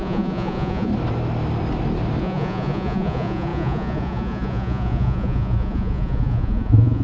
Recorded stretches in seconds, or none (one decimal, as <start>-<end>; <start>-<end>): 0.9-2.2